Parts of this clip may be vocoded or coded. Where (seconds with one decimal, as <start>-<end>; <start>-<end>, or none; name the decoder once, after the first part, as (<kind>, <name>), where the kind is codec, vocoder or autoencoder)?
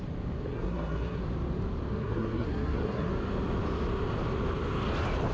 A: 0.5-1.2 (codec, SNAC); 1.9-3.1